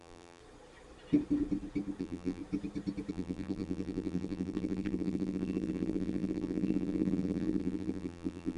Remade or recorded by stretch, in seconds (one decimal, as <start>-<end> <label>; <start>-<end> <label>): 0.0-0.4 remade; 0.4-2.0 recorded; 2.0-2.4 remade; 2.4-3.1 recorded; 3.1-8.6 remade